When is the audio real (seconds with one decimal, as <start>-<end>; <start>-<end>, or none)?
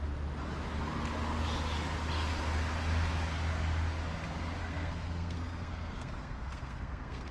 0.0-4.6